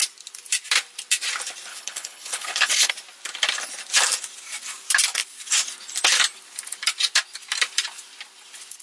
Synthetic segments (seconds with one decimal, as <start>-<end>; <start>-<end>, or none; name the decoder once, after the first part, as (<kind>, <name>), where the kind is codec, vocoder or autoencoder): 1.7-2.9 (codec, HILCodec)